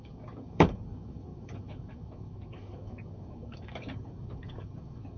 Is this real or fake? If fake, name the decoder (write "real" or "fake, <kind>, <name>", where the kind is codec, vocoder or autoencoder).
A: fake, codec, DAC